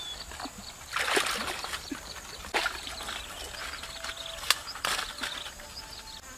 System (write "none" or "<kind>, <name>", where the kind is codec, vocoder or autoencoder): none